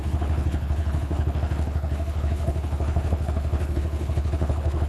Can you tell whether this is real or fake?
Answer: fake